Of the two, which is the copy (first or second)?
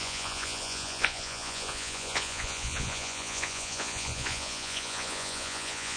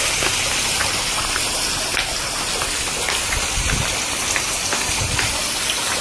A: first